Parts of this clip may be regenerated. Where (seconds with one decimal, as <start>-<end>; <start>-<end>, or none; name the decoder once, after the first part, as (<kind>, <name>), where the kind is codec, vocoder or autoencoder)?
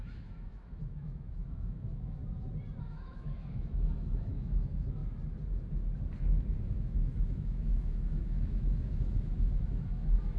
0.0-2.2 (autoencoder, DAC-VAE); 2.8-5.0; 6.6-10.4